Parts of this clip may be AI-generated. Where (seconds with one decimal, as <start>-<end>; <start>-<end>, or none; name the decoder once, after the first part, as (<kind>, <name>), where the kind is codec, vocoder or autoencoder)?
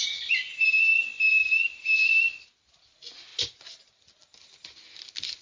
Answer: none